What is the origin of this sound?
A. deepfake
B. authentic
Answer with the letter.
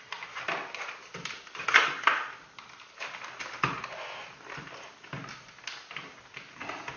B